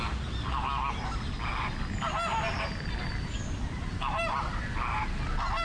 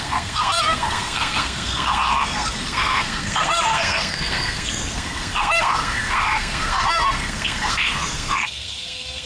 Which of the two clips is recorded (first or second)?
first